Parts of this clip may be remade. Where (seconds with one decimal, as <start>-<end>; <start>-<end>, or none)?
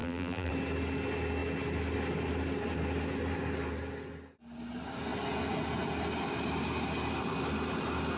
0.0-0.5